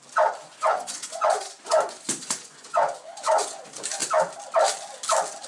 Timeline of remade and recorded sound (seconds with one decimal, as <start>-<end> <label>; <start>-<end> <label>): 0.0-0.4 recorded; 0.4-3.6 remade; 3.6-5.5 recorded